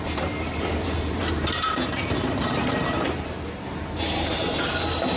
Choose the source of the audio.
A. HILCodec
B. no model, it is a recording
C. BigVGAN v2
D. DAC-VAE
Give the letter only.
C